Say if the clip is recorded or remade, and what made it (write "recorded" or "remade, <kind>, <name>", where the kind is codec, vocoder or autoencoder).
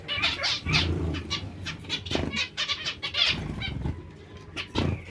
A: recorded